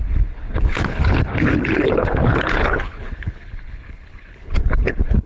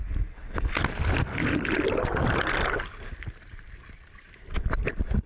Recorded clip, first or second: second